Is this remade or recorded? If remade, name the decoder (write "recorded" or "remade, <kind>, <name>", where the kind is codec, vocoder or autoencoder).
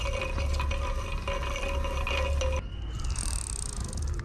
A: recorded